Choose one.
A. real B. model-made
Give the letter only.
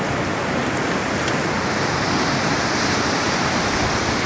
A